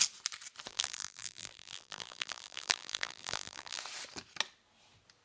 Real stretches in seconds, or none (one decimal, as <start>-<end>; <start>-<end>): 0.0-0.7; 3.8-5.2